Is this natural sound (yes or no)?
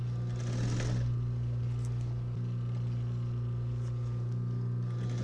yes